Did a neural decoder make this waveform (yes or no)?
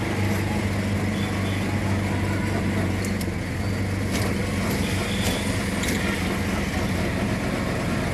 no